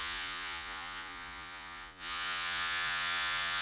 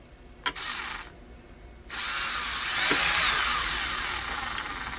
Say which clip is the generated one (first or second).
first